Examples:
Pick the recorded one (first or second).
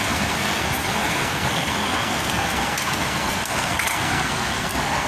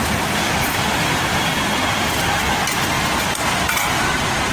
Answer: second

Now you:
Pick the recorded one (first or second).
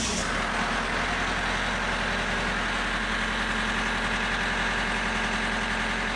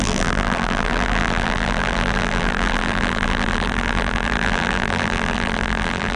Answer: first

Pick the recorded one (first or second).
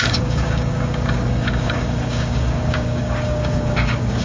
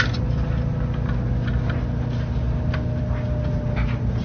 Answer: second